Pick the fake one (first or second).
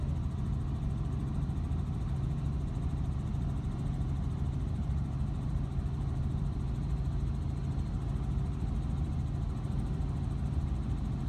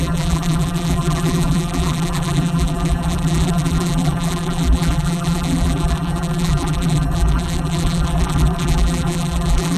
second